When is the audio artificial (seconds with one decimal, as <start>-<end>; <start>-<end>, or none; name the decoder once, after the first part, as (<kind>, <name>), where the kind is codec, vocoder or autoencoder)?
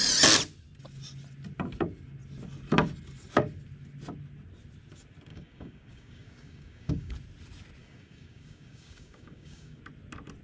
5.3-7.1 (codec, DAC); 7.8-9.8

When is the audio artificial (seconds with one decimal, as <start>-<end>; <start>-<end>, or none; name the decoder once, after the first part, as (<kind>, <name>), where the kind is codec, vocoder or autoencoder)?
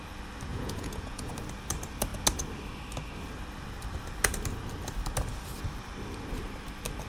0.5-1.3 (vocoder, Vocos)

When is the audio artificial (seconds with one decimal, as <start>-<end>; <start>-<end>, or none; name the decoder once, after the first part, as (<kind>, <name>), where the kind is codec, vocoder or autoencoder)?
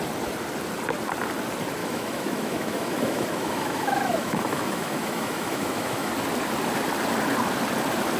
1.8-6.1 (autoencoder, DAC-VAE)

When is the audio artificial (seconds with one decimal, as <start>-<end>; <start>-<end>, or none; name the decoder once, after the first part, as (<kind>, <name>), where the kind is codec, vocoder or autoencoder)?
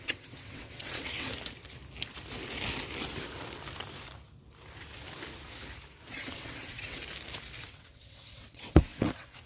0.0-1.3 (vocoder, WaveNeXt); 6.1-7.0; 7.7-9.5